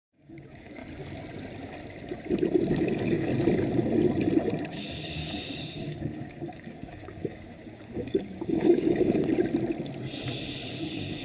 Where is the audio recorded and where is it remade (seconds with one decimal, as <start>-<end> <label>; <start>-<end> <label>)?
0.0-0.8 remade; 0.8-2.7 recorded; 2.7-3.3 remade; 3.3-4.7 recorded; 4.7-9.3 remade; 9.3-10.7 recorded; 10.7-11.2 remade